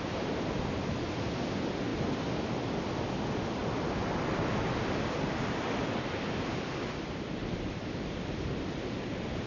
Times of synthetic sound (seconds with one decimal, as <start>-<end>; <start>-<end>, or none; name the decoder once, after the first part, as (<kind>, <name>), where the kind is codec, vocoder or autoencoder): none